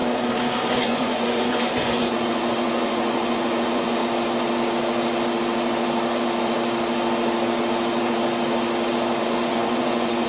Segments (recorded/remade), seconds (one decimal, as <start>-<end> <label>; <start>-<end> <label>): 0.0-0.6 recorded; 0.6-4.0 remade; 4.0-9.2 recorded; 9.2-10.3 remade